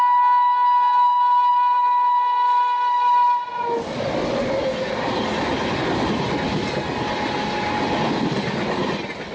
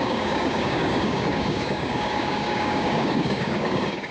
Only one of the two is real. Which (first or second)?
first